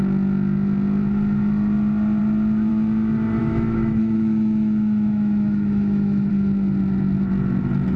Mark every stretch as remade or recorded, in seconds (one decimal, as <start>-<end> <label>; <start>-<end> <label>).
0.0-3.4 recorded; 3.4-6.3 remade; 6.3-8.0 recorded